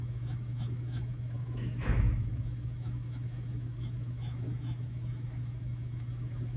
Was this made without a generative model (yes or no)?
no